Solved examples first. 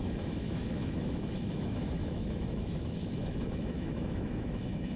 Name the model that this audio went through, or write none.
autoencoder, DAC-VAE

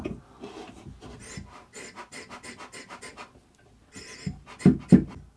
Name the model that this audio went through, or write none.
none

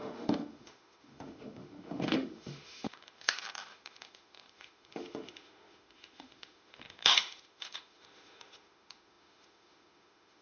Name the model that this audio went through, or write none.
autoencoder, DAC-VAE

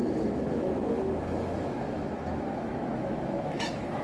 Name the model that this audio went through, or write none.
autoencoder, DAC-VAE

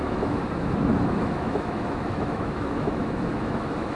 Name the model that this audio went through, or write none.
autoencoder, DAC-VAE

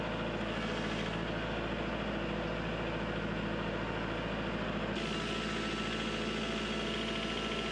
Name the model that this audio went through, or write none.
none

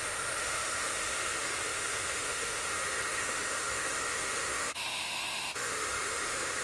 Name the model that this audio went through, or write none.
autoencoder, DAC-VAE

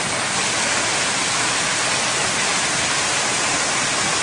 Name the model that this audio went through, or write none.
none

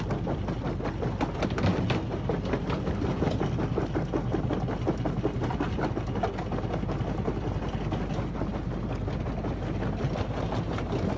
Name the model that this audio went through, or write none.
none